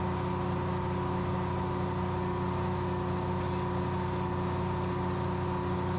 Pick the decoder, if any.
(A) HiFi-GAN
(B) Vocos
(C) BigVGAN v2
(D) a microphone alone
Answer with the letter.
D